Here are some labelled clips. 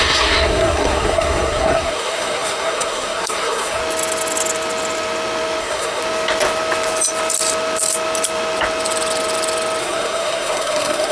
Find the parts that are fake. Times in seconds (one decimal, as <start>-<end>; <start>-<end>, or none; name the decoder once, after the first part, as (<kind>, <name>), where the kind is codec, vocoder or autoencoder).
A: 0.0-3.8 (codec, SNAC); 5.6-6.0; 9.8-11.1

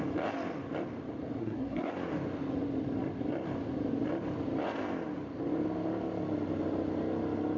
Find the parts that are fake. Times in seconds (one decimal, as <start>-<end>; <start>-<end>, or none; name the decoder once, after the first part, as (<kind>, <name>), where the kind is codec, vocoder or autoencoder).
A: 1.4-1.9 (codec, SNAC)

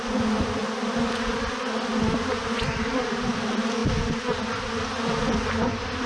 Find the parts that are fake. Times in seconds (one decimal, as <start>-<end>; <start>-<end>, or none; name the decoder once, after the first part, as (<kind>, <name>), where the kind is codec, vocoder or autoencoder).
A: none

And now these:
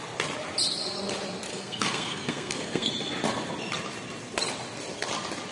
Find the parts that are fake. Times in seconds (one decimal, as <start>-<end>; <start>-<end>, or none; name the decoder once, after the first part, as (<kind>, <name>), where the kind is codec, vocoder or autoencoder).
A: 1.5-2.9 (codec, SNAC)